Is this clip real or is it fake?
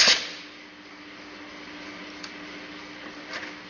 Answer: real